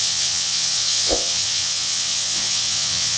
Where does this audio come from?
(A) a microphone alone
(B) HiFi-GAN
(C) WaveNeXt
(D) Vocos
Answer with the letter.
C